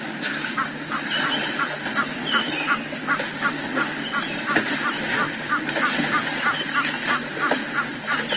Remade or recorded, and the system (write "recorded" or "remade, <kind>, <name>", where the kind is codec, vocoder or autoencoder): recorded